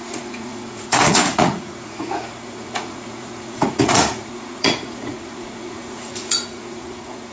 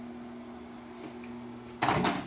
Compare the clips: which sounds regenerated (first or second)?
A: first